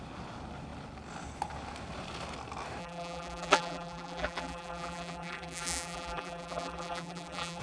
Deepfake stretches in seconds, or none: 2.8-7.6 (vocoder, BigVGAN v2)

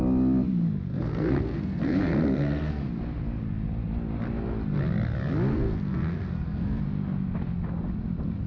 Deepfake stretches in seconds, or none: 0.9-2.8 (codec, SNAC); 5.5-6.8

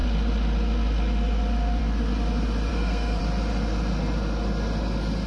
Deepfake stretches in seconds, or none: 2.7-3.2 (codec, SNAC)

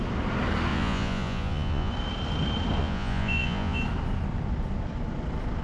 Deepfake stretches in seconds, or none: 0.7-1.9 (vocoder, Vocos); 2.8-3.8